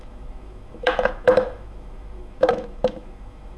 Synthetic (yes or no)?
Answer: yes